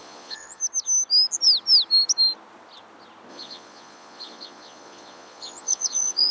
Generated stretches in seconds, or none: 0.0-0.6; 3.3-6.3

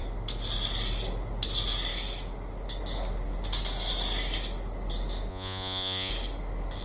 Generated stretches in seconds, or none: 5.3-6.1